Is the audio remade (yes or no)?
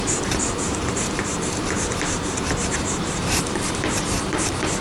yes